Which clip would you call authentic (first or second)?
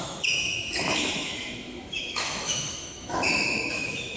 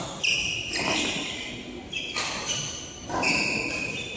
second